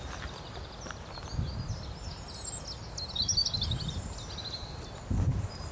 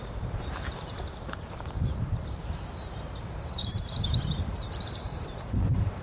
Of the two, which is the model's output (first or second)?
second